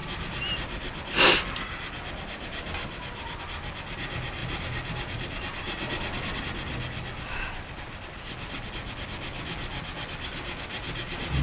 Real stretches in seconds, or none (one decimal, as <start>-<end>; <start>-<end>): 0.0-11.4